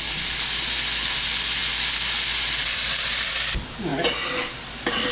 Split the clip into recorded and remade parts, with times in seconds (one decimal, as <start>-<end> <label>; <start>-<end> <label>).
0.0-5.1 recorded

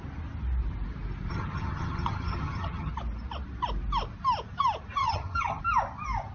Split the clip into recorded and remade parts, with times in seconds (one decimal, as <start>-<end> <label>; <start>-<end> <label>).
0.0-1.3 recorded; 1.3-2.9 remade; 2.9-5.0 recorded; 5.0-5.6 remade; 5.6-6.3 recorded

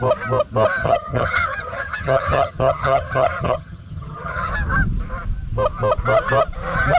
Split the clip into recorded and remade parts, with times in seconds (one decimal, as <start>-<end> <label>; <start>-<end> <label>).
0.0-0.8 recorded; 0.8-4.5 remade; 4.5-7.0 recorded

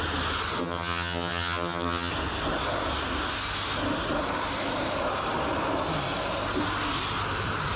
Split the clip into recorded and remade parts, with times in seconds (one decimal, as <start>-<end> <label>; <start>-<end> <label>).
0.0-0.6 recorded; 0.6-2.1 remade; 2.1-7.8 recorded

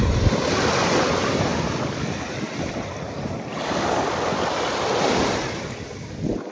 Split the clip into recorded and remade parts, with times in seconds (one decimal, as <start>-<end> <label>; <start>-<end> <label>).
0.0-6.5 recorded

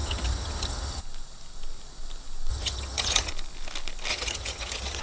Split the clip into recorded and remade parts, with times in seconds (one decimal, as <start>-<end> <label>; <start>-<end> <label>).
0.0-1.0 remade; 1.0-2.5 recorded; 2.5-3.3 remade; 3.3-4.1 recorded; 4.1-5.0 remade

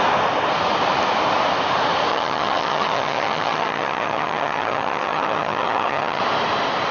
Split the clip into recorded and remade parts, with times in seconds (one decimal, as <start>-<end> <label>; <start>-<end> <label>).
0.0-2.1 recorded; 2.1-6.2 remade; 6.2-6.9 recorded

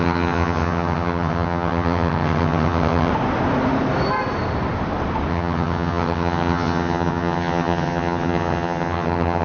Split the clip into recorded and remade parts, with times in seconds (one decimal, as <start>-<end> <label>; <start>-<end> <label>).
0.0-3.1 remade; 3.1-5.3 recorded; 5.3-9.4 remade